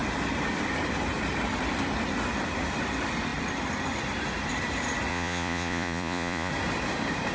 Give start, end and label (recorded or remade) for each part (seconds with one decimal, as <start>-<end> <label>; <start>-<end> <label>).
0.0-5.1 recorded; 5.1-6.5 remade; 6.5-7.3 recorded